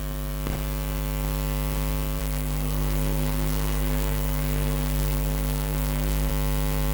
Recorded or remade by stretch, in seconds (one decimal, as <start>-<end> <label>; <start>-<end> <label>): 0.0-2.2 recorded; 2.2-6.3 remade; 6.3-6.9 recorded